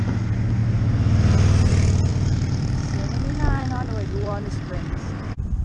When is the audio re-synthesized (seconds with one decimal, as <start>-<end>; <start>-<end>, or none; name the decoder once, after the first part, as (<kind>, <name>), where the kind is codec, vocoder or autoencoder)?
2.1-5.1 (vocoder, BigVGAN v2)